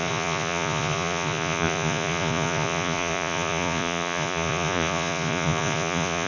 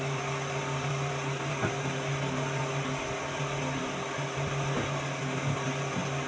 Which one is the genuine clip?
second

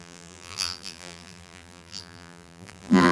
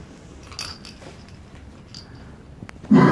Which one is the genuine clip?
second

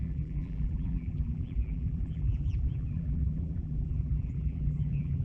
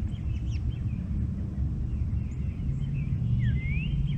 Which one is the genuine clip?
second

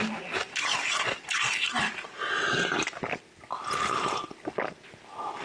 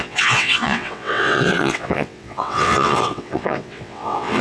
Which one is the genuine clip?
first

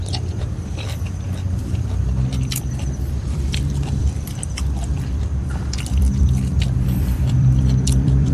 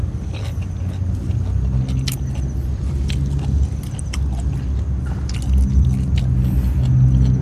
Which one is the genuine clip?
second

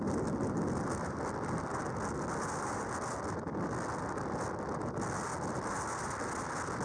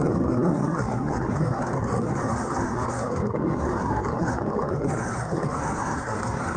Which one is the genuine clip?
first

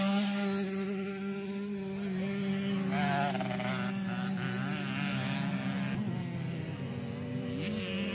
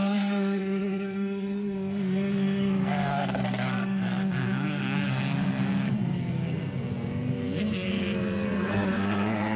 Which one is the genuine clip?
first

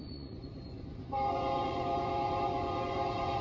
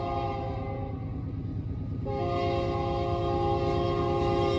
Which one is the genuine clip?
second